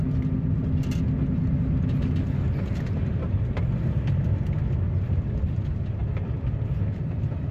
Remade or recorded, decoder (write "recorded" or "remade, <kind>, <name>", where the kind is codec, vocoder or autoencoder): recorded